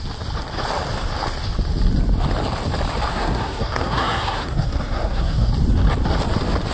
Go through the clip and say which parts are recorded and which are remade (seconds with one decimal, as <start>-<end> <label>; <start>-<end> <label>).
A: 0.0-3.1 recorded; 3.1-5.5 remade; 5.5-6.7 recorded